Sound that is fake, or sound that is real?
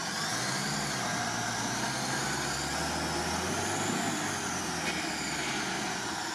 real